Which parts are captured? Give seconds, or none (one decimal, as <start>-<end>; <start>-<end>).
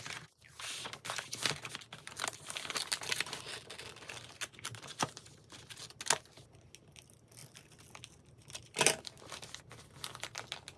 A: 0.0-10.8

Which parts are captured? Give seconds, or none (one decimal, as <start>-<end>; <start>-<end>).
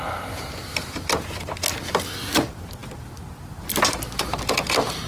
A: 0.0-5.1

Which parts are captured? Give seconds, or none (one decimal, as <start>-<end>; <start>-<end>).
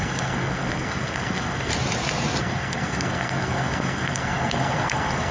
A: 1.7-2.4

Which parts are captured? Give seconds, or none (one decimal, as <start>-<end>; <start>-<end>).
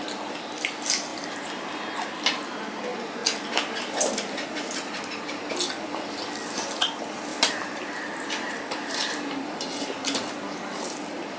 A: 0.0-7.3; 9.2-11.4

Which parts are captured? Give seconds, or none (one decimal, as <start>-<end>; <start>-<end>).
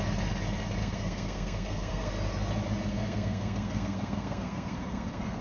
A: 0.0-0.8; 2.1-2.9